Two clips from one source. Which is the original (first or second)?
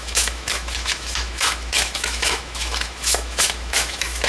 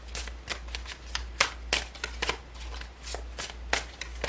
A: second